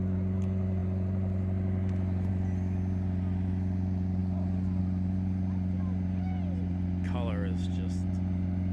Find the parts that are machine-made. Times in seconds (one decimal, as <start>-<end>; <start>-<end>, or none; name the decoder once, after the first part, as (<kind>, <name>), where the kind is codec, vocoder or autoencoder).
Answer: none